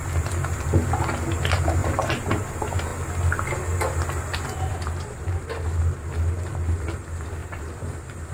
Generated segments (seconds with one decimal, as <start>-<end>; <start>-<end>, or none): 1.8-2.5; 4.7-5.8; 7.4-8.3